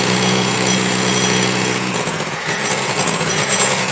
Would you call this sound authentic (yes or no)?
no